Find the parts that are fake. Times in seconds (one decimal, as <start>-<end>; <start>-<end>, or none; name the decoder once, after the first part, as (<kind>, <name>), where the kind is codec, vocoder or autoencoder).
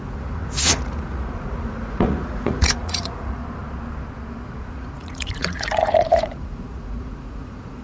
0.0-3.4 (vocoder, Vocos); 4.6-7.8